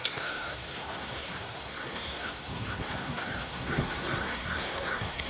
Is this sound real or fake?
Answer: fake